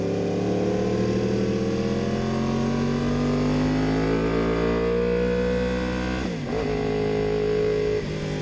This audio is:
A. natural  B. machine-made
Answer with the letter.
A